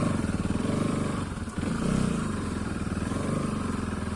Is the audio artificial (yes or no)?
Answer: yes